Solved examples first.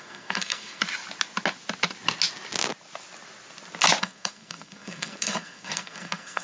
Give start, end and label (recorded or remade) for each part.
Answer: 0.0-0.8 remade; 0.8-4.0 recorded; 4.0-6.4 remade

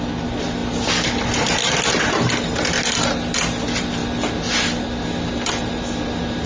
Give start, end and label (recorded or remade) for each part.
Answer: 0.0-6.5 recorded

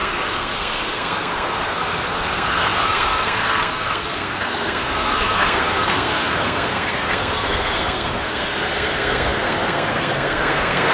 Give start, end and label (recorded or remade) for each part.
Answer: 0.0-10.9 remade

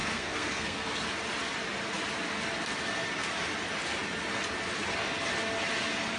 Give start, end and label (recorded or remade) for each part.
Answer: 0.0-0.9 remade; 0.9-6.2 recorded